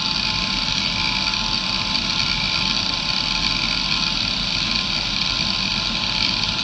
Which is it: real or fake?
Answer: real